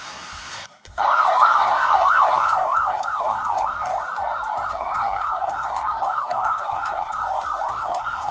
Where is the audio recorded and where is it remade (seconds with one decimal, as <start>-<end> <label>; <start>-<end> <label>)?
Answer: 0.0-3.9 remade; 3.9-4.7 recorded; 4.7-7.2 remade; 7.2-7.8 recorded; 7.8-8.3 remade